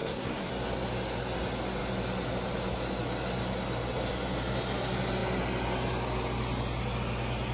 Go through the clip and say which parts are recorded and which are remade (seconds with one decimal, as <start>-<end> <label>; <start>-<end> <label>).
0.0-0.5 remade; 0.5-7.5 recorded